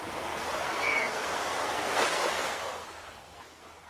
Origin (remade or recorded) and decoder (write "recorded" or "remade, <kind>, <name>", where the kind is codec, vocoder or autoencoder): remade, codec, SNAC